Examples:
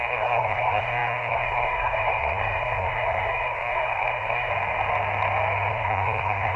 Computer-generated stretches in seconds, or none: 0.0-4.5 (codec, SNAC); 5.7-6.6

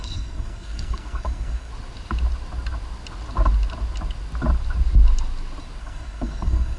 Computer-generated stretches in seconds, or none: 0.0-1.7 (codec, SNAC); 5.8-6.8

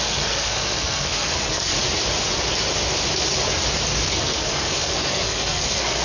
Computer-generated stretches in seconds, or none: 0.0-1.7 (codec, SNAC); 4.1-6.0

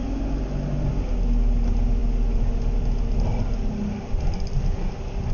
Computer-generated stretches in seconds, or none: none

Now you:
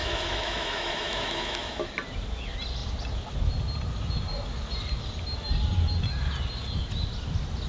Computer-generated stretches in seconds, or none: 0.0-1.8 (autoencoder, DAC-VAE)

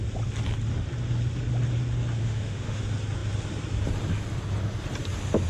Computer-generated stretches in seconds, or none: 2.2-2.8 (autoencoder, DAC-VAE)

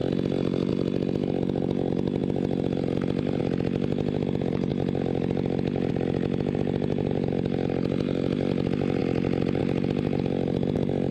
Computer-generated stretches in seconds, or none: none